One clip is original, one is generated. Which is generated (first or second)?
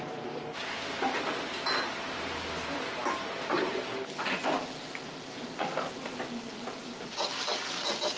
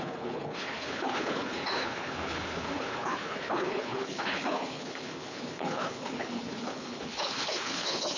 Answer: second